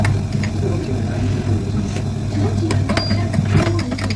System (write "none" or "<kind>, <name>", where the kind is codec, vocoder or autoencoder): none